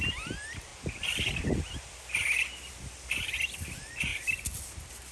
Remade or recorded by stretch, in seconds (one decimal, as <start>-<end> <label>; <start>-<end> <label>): 0.0-4.1 remade; 4.1-5.1 recorded